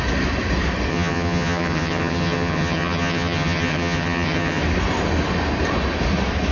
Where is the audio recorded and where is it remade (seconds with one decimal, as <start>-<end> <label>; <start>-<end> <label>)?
0.0-0.9 recorded; 0.9-4.6 remade; 4.6-6.5 recorded